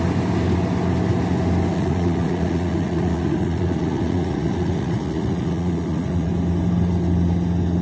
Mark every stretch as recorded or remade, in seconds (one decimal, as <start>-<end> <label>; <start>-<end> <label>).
0.0-1.7 recorded; 1.7-6.3 remade; 6.3-7.8 recorded